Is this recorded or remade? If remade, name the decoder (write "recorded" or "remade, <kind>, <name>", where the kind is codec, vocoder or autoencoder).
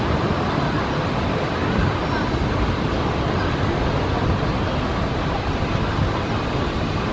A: recorded